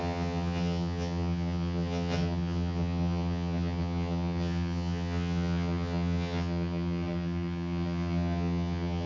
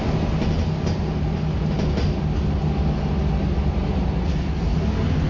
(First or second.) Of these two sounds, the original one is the second